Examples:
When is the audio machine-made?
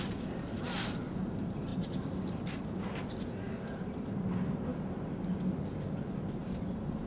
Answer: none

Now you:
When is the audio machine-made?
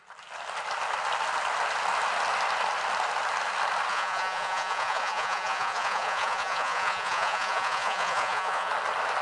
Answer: 3.9-8.7 (vocoder, Vocos)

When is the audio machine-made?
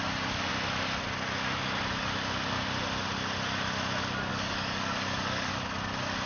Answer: 0.0-0.5 (codec, DAC); 4.3-5.5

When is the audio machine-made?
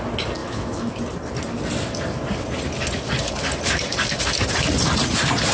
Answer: 0.4-1.0 (autoencoder, DAC-VAE)